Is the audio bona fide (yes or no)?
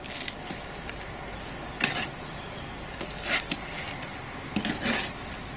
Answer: yes